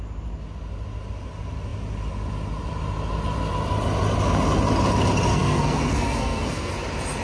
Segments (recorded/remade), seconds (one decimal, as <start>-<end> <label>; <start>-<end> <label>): 0.0-5.3 recorded; 5.3-6.7 remade; 6.7-7.2 recorded